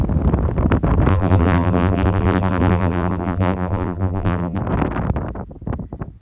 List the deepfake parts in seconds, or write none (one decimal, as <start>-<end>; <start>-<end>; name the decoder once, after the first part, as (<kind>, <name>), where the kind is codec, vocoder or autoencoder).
1.1-4.6 (vocoder, BigVGAN v2)